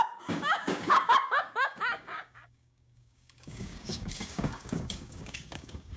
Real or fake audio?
fake